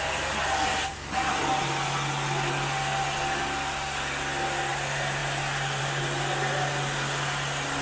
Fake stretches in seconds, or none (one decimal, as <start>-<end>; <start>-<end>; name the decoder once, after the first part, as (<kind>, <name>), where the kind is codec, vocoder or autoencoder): none